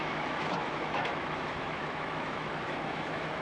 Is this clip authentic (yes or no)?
no